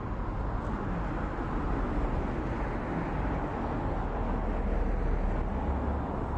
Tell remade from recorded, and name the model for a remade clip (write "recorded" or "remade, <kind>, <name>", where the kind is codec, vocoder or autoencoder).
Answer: recorded